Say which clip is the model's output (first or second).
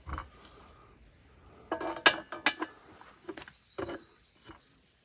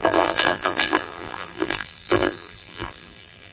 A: second